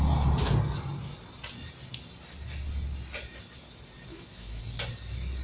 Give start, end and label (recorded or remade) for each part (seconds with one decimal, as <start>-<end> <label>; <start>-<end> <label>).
0.0-4.1 recorded; 4.1-4.6 remade; 4.6-5.4 recorded

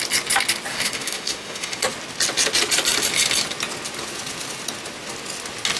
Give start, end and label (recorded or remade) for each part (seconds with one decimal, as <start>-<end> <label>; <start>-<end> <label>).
0.0-0.7 recorded; 0.7-1.8 remade; 1.8-5.8 recorded

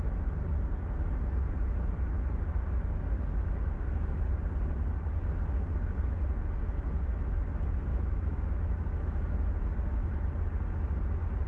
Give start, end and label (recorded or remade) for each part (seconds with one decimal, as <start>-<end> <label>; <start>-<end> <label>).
0.0-7.9 recorded; 7.9-10.1 remade; 10.1-11.5 recorded

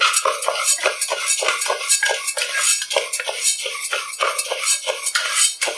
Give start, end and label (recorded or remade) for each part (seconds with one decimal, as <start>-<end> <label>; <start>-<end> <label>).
0.0-5.8 recorded